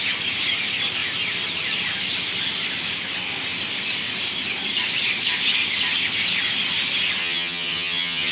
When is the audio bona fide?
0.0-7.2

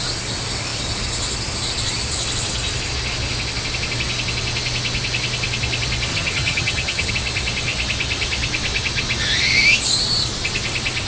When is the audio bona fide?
0.0-6.1; 7.1-11.1